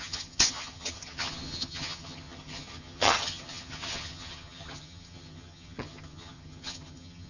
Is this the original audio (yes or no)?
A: no